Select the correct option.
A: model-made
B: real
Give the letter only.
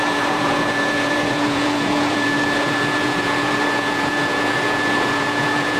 A